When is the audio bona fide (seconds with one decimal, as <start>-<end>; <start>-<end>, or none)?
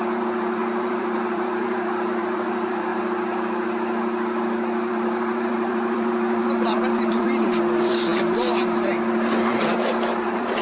2.9-4.9